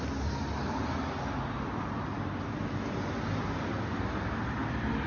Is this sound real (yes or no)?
yes